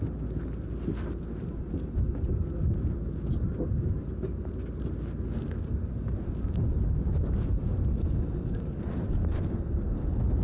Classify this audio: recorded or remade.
recorded